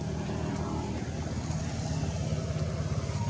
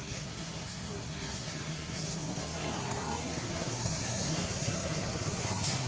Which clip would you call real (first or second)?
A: first